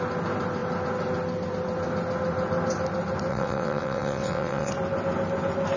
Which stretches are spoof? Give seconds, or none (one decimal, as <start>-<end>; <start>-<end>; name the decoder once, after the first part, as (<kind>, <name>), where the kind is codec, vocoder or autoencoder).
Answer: 3.3-4.7 (vocoder, WaveNeXt)